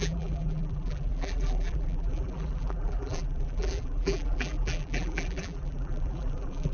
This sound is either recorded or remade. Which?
remade